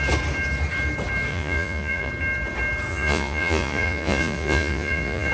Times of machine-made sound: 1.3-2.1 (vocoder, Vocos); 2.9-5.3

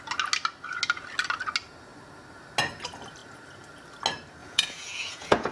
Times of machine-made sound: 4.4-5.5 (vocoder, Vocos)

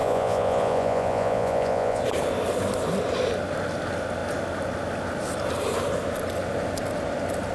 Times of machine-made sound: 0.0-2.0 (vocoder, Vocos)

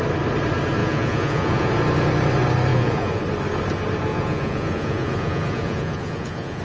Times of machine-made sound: 0.8-1.7 (vocoder, Vocos); 2.7-3.2; 4.1-6.6

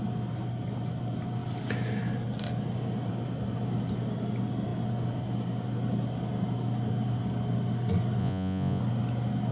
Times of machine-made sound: 8.2-8.8 (vocoder, Vocos)